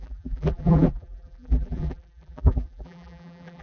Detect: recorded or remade remade